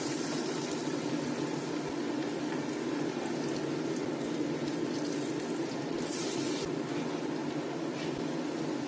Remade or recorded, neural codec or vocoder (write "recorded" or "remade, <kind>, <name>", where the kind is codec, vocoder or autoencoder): recorded